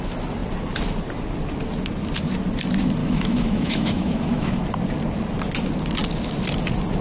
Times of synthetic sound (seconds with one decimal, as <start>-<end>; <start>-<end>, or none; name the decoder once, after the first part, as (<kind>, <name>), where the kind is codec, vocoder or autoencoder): 3.0-4.6 (autoencoder, DAC-VAE)